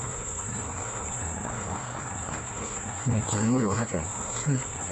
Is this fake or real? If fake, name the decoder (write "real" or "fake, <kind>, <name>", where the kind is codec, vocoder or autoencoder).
fake, codec, SNAC